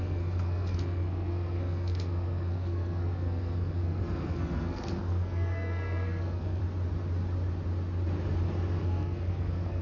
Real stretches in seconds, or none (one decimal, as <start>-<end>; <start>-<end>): 6.6-8.8